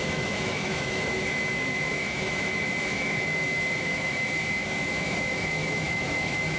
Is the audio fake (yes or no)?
yes